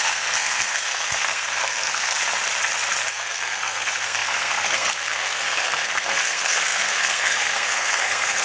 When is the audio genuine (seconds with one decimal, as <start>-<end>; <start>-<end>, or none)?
2.2-3.1